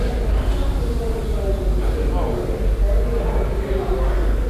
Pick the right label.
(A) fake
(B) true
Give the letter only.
B